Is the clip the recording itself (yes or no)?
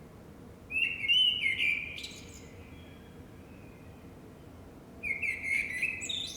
yes